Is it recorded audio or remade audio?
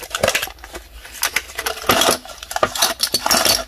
recorded